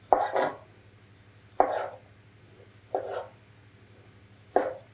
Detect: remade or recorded recorded